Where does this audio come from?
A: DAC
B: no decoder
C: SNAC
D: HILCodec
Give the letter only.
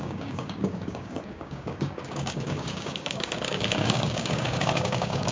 A